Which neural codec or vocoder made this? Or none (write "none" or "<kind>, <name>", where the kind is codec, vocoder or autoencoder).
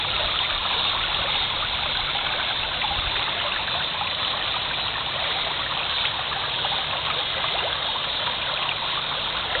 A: none